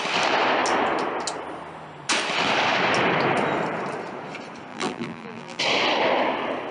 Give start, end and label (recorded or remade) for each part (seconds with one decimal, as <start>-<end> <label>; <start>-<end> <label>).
0.0-4.7 recorded; 4.7-5.6 remade; 5.6-6.7 recorded